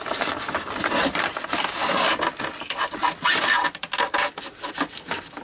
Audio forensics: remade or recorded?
recorded